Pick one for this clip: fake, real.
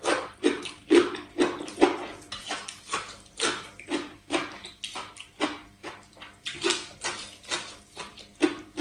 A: real